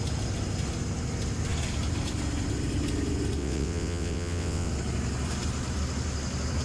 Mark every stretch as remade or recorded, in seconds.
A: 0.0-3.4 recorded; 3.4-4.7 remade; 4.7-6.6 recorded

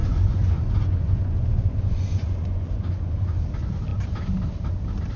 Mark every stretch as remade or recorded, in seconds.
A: 0.0-3.1 remade; 3.1-5.2 recorded

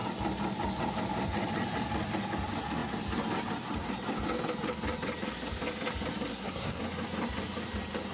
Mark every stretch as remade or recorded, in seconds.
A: 0.0-6.3 recorded; 6.3-6.8 remade; 6.8-8.1 recorded

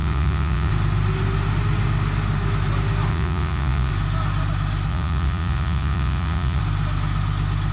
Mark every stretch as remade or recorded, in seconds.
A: 0.0-0.7 remade; 0.7-3.1 recorded; 3.1-3.9 remade; 3.9-4.9 recorded; 4.9-6.6 remade; 6.6-7.7 recorded

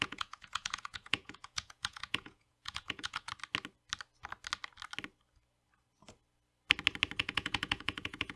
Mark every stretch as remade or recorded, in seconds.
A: 0.0-3.3 remade; 3.3-7.2 recorded; 7.2-8.4 remade

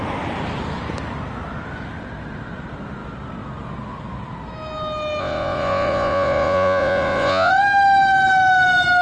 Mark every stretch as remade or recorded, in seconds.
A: 0.0-5.2 recorded; 5.2-7.5 remade; 7.5-9.0 recorded

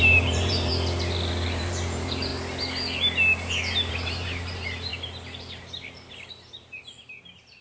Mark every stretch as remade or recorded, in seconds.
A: 0.0-0.7 remade; 0.7-1.3 recorded; 1.3-2.3 remade; 2.3-3.9 recorded; 3.9-4.9 remade; 4.9-6.8 recorded; 6.8-7.6 remade